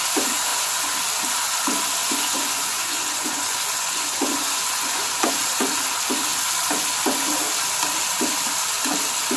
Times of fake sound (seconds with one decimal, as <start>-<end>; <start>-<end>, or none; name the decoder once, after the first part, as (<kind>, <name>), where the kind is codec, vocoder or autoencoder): 0.5-1.0 (vocoder, Vocos); 2.0-5.3